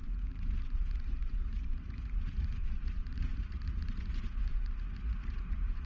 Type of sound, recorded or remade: remade